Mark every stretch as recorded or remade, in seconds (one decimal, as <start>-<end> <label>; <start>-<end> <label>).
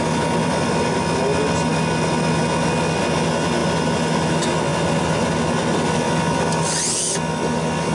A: 0.0-0.4 recorded; 0.4-1.0 remade; 1.0-7.9 recorded